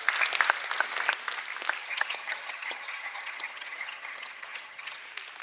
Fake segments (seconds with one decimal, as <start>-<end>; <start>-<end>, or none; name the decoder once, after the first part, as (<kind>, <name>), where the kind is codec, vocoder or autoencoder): 1.8-5.0 (vocoder, HiFi-GAN)